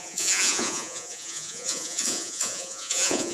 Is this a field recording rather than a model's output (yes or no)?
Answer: no